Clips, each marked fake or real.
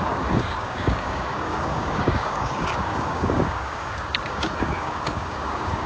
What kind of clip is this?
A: fake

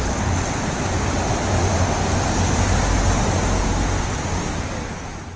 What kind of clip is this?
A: real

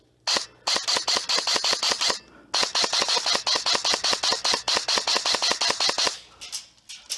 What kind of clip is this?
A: real